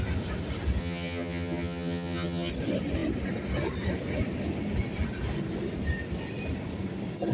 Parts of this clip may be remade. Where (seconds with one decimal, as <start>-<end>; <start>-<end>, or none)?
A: 0.8-2.5